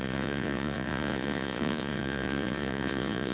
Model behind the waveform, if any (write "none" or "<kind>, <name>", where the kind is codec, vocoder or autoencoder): vocoder, Vocos